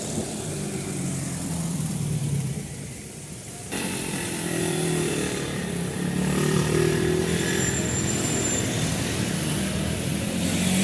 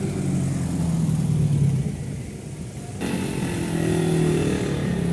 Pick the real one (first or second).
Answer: second